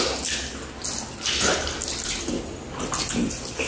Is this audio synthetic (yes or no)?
no